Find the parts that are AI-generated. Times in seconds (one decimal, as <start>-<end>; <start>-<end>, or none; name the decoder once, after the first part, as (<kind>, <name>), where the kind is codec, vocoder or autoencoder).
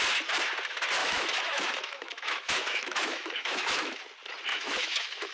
1.0-4.0 (autoencoder, DAC-VAE); 4.5-5.3